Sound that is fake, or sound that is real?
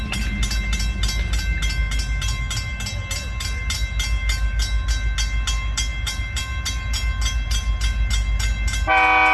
real